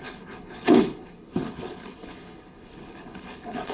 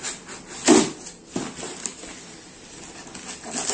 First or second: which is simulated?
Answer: first